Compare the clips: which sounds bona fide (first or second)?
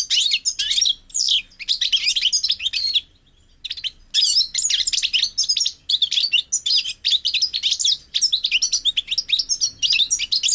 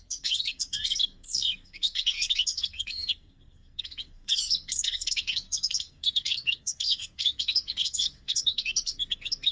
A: first